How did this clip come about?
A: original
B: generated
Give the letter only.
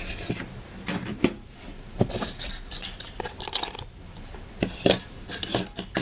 A